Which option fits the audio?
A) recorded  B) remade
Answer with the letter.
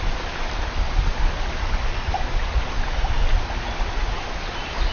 A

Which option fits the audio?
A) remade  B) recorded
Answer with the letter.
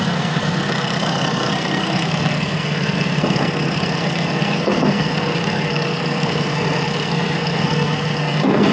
A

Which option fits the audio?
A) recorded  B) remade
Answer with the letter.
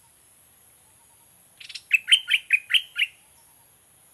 A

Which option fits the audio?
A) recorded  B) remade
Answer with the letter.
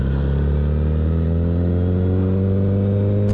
A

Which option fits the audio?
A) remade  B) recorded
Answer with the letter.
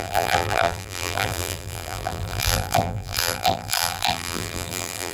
A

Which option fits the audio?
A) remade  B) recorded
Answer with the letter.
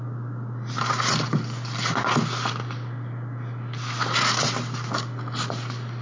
B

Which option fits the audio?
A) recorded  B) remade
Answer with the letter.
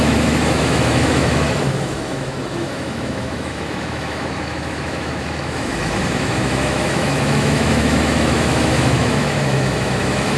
B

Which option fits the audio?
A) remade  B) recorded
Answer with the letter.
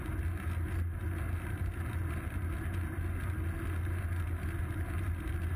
B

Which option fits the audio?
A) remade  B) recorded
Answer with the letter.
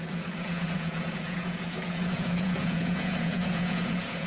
A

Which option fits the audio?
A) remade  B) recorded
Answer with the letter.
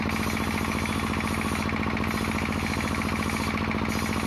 B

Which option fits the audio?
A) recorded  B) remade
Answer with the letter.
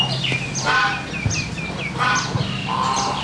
A